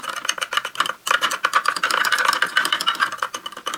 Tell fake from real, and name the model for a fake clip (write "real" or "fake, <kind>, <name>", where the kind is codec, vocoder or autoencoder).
real